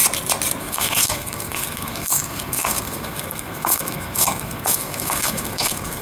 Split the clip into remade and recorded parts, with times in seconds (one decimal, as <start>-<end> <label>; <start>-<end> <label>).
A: 0.0-0.6 recorded; 0.6-6.0 remade